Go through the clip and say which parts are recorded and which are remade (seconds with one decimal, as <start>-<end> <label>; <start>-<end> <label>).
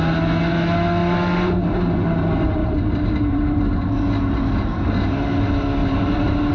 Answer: 0.0-1.0 recorded; 1.0-1.6 remade; 1.6-2.6 recorded; 2.6-3.6 remade; 3.6-5.8 recorded; 5.8-6.5 remade